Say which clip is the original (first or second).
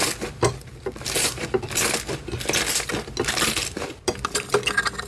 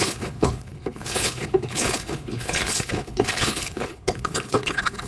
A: first